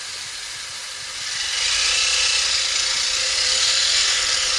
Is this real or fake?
real